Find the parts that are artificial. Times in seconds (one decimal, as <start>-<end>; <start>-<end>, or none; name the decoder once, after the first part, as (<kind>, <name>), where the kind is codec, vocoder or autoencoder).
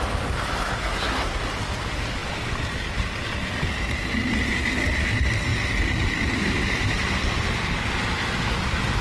0.8-1.4 (codec, SNAC)